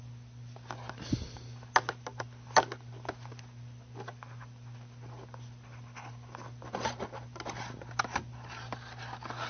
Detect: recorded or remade recorded